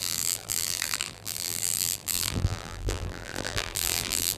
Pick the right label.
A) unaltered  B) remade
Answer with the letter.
B